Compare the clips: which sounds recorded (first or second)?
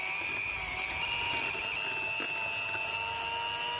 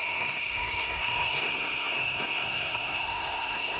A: first